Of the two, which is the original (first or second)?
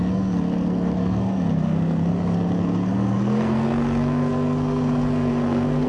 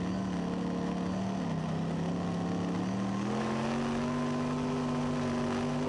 second